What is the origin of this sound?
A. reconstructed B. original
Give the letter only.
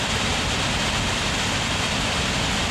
B